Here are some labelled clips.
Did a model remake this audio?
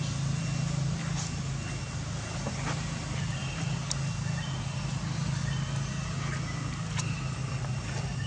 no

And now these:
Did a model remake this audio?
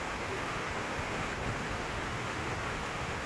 yes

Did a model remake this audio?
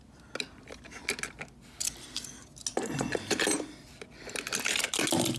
no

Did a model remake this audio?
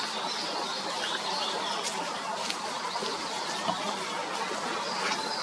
no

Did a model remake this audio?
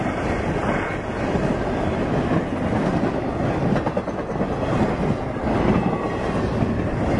no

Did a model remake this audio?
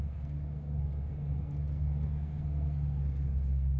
yes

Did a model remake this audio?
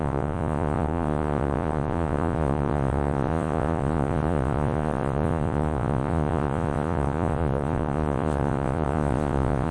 yes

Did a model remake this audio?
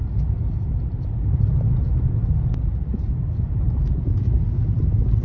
no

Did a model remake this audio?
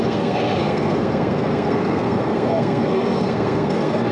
yes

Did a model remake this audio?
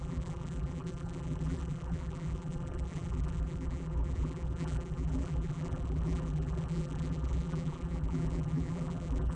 yes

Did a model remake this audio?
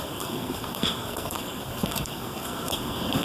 yes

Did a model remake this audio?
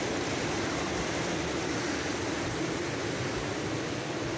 no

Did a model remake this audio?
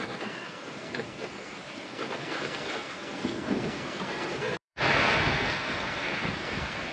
yes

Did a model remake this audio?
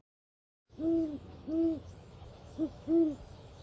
yes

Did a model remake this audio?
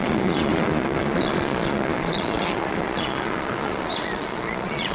yes